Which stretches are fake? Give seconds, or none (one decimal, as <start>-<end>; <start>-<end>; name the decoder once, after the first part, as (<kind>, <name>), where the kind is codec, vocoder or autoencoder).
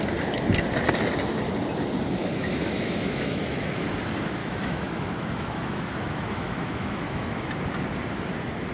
2.2-3.8 (autoencoder, DAC-VAE); 4.4-7.5